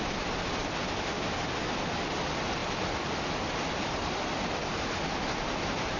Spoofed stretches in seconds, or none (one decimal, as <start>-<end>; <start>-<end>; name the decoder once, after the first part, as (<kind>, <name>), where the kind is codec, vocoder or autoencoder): none